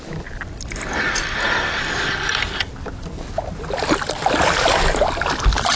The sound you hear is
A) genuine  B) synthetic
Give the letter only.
A